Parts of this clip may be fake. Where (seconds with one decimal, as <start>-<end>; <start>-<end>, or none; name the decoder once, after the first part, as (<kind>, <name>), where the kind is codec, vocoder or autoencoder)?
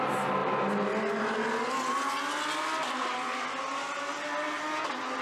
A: none